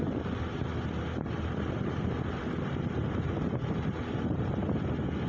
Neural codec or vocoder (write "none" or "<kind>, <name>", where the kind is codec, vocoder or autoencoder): none